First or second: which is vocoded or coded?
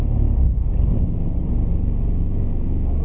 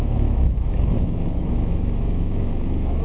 second